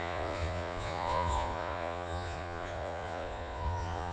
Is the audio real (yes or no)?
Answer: no